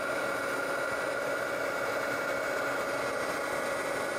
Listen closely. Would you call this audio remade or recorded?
recorded